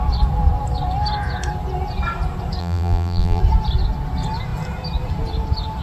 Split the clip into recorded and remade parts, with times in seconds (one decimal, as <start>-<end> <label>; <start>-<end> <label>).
0.0-2.6 recorded; 2.6-3.4 remade; 3.4-5.8 recorded